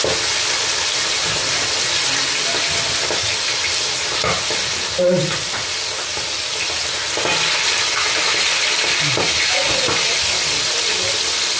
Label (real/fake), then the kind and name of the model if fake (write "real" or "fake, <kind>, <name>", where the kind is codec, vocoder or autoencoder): real